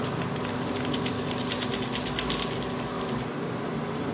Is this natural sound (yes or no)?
yes